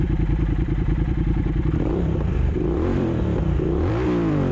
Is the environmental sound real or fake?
fake